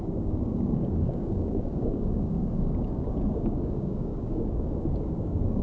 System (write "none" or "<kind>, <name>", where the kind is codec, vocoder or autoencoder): codec, DAC